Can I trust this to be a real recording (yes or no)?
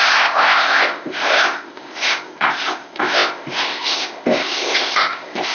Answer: no